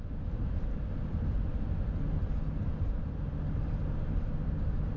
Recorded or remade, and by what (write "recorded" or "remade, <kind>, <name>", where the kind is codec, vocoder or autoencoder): recorded